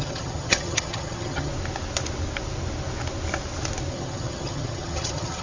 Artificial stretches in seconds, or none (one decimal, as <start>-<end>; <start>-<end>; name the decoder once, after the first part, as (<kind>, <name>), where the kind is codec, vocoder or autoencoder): 0.0-1.5 (vocoder, HiFi-GAN); 3.9-5.4